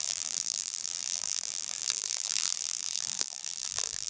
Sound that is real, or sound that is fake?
fake